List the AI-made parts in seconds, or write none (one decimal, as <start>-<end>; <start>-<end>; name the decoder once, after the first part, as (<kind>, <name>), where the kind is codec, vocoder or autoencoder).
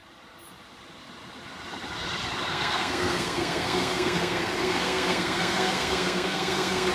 2.5-6.9 (codec, SNAC)